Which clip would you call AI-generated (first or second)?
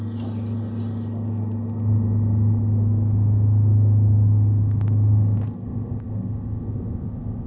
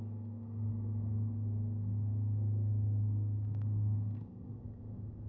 second